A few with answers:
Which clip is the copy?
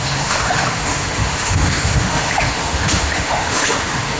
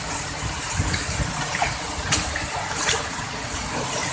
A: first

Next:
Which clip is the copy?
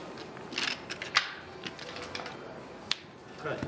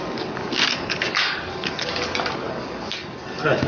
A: second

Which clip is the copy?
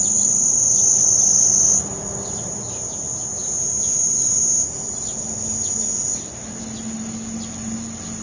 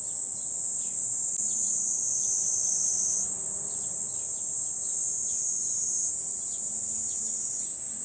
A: second